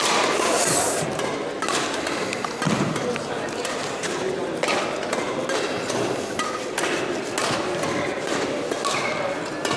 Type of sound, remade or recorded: recorded